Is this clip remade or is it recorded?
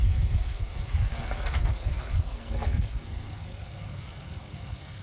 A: remade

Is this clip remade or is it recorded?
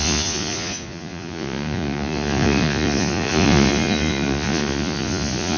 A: remade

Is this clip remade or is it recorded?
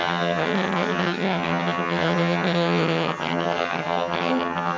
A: remade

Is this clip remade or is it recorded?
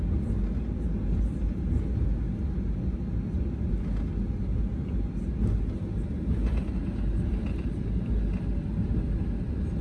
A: recorded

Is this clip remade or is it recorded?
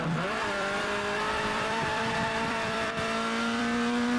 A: remade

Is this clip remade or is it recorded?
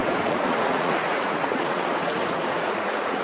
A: remade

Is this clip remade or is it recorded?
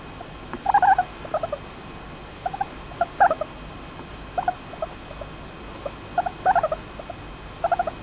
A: recorded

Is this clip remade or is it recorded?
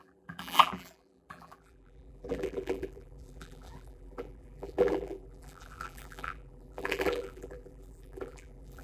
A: remade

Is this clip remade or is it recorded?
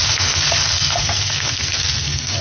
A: remade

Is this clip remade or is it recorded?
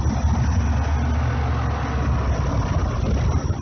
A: recorded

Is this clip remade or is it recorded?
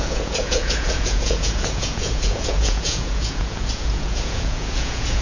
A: remade